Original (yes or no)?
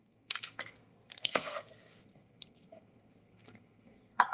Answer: no